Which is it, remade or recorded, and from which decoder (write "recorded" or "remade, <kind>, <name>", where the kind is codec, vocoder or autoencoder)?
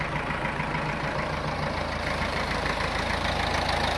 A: remade, vocoder, BigVGAN v2